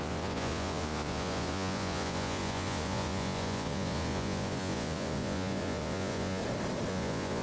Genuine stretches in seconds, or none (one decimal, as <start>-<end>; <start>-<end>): 6.4-6.9